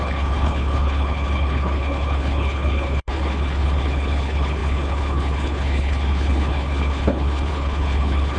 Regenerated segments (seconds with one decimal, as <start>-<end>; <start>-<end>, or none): 0.0-8.4